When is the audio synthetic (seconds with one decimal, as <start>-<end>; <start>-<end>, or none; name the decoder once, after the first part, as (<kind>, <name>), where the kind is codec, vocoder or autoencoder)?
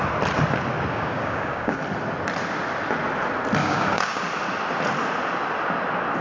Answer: 0.9-1.8 (codec, DAC); 3.6-4.2